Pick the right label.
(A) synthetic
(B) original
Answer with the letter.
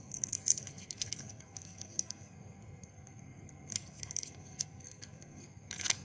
A